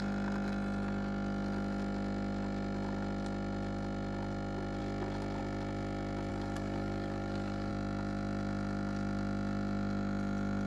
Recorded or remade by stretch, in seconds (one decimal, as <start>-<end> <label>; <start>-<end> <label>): 0.0-6.3 recorded; 6.3-7.7 remade; 7.7-10.7 recorded